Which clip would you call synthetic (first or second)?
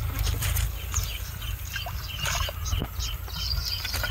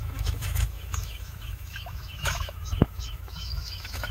second